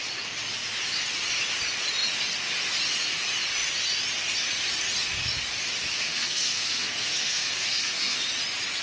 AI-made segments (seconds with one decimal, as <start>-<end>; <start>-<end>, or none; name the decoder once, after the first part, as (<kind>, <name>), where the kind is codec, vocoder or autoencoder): 5.9-8.2 (codec, SNAC)